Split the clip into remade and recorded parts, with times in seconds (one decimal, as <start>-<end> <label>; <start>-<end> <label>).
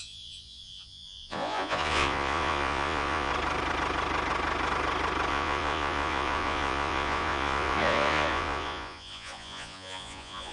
0.0-3.3 remade; 3.3-5.3 recorded; 5.3-10.5 remade